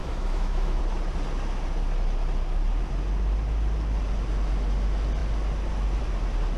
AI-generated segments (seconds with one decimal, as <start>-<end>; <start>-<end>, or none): 0.0-0.8